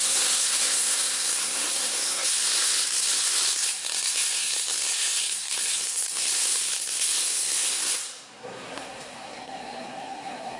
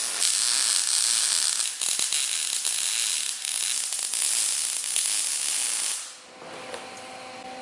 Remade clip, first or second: first